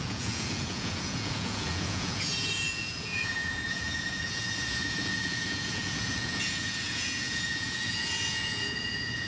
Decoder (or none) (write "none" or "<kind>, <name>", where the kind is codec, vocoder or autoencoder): vocoder, Vocos